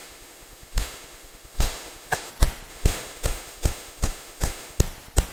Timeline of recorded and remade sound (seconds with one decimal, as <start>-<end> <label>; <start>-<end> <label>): 0.0-2.3 remade; 2.3-2.7 recorded; 2.7-4.8 remade; 4.8-5.3 recorded